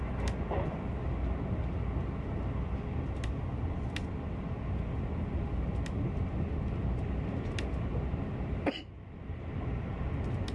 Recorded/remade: recorded